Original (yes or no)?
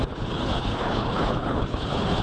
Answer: no